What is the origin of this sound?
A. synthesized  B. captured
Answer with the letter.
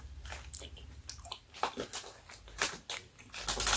B